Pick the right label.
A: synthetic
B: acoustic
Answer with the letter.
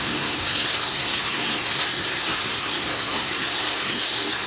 A